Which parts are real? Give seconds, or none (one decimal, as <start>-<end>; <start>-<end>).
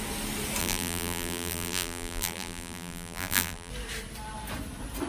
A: 0.0-0.6; 3.7-5.1